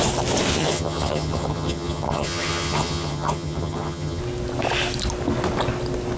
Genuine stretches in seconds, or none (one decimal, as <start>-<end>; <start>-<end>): 0.0-0.5; 4.2-6.2